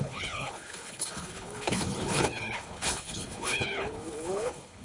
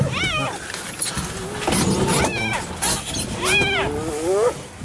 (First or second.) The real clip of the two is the second